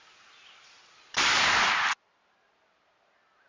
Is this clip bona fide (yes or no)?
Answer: yes